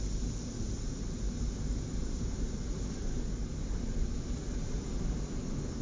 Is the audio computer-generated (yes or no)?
no